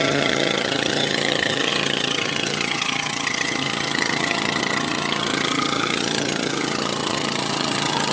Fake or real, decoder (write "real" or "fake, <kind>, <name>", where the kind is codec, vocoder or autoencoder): fake, vocoder, HiFi-GAN